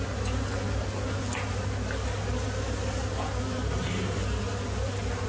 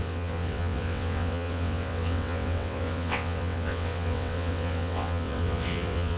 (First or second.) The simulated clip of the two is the second